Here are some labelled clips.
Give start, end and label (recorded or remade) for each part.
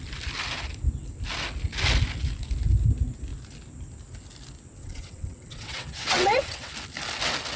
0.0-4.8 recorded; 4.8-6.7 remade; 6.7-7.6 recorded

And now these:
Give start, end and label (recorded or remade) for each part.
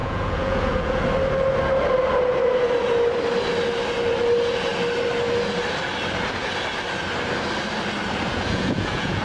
0.0-1.0 remade; 1.0-8.3 recorded; 8.3-9.2 remade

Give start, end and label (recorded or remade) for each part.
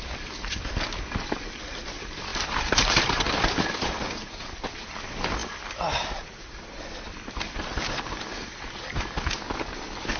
0.0-2.3 recorded; 2.3-5.0 remade; 5.0-10.2 recorded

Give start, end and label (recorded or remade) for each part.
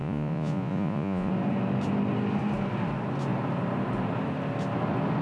0.0-1.3 remade; 1.3-5.2 recorded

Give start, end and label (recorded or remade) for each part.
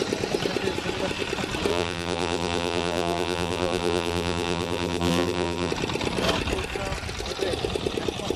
0.0-1.7 recorded; 1.7-5.7 remade; 5.7-8.4 recorded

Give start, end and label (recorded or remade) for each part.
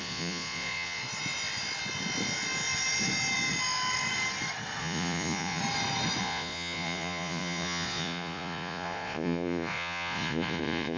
0.0-1.0 remade; 1.0-4.8 recorded; 4.8-5.6 remade; 5.6-6.2 recorded; 6.2-11.0 remade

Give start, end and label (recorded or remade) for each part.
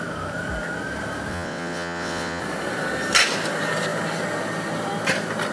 0.0-1.3 recorded; 1.3-2.4 remade; 2.4-5.5 recorded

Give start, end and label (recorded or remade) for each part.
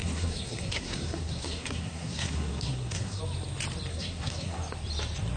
0.0-3.2 remade; 3.2-3.9 recorded; 3.9-4.6 remade; 4.6-5.4 recorded